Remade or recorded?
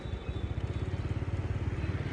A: recorded